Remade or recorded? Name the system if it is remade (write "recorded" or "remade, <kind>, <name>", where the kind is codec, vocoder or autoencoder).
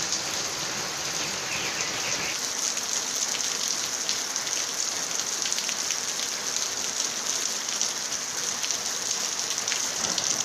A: recorded